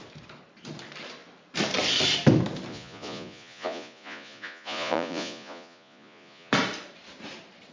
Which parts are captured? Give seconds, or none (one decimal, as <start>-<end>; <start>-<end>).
0.0-2.7; 6.5-7.7